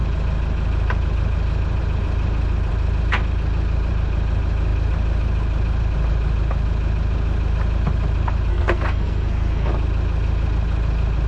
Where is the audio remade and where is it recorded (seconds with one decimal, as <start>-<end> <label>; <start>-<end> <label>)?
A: 0.0-8.5 recorded; 8.5-9.7 remade; 9.7-11.3 recorded